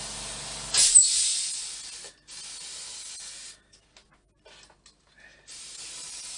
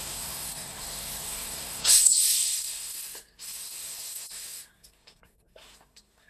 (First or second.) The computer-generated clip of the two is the second